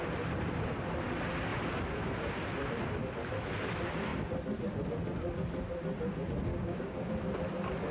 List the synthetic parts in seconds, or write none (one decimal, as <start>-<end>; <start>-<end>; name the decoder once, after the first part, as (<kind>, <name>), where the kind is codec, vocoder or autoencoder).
6.5-7.1 (codec, DAC)